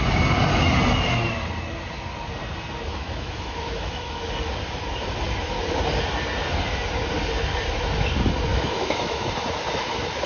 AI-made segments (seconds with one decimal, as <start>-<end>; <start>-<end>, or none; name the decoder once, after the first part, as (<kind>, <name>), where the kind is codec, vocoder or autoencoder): 2.9-4.3 (autoencoder, DAC-VAE); 8.5-9.3